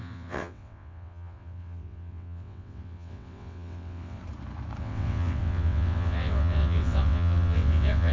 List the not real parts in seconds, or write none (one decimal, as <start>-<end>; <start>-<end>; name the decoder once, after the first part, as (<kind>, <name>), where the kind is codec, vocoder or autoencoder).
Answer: 0.0-4.2 (vocoder, WaveNeXt); 4.8-8.1